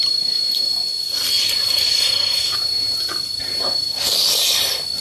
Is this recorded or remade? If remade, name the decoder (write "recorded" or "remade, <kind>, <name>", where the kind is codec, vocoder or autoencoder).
recorded